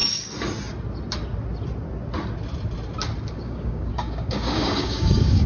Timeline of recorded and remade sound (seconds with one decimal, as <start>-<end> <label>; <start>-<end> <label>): 0.0-3.3 recorded; 3.3-5.5 remade